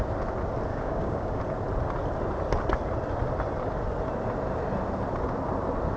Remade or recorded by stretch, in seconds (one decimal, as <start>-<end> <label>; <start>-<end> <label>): 0.0-0.7 recorded; 0.7-1.4 remade; 1.4-6.0 recorded